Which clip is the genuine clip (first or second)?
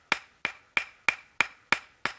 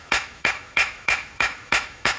first